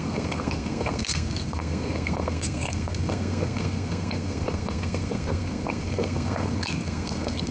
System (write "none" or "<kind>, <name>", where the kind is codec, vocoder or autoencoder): codec, SNAC